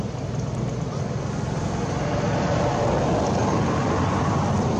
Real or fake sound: real